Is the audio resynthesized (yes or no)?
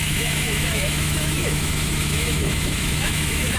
yes